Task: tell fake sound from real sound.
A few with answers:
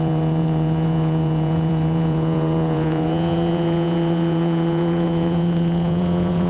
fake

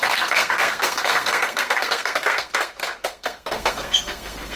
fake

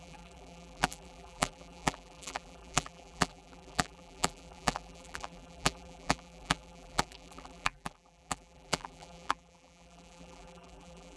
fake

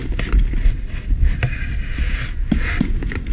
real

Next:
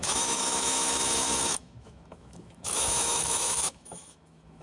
fake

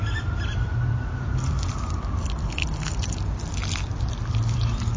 fake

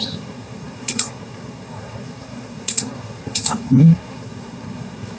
fake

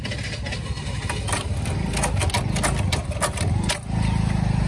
real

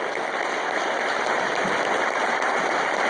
fake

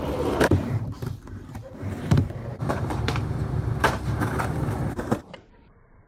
fake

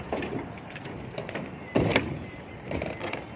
fake